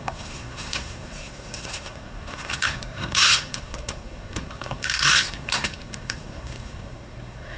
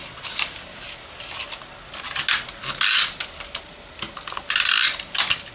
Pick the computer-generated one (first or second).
first